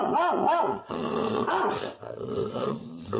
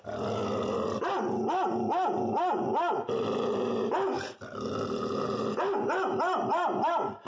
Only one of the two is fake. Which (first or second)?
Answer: first